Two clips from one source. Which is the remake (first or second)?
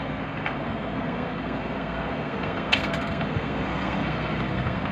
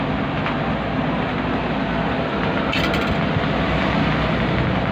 first